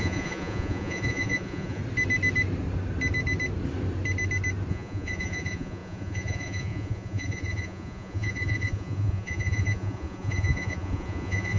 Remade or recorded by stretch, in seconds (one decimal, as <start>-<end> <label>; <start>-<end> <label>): 0.0-1.8 remade; 1.8-4.7 recorded; 4.7-11.6 remade